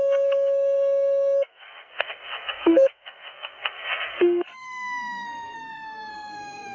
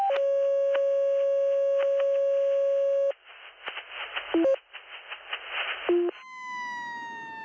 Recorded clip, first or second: second